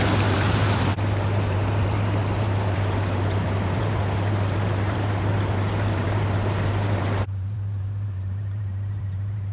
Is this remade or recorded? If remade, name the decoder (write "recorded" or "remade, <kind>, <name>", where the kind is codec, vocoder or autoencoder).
remade, vocoder, BigVGAN v2